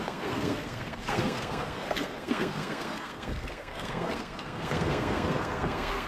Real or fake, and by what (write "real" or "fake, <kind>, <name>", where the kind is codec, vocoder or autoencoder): fake, codec, SNAC